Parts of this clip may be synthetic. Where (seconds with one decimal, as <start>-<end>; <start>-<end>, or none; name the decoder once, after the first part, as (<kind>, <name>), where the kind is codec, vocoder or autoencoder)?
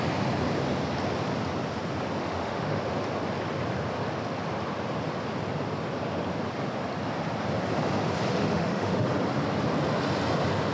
2.2-2.8 (autoencoder, DAC-VAE); 8.3-9.1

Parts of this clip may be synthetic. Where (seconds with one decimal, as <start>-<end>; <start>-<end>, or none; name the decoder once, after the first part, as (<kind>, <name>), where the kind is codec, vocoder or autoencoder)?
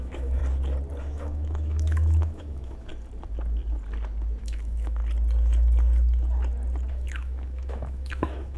0.0-0.4 (autoencoder, DAC-VAE); 1.0-2.9; 4.4-5.0; 6.9-8.6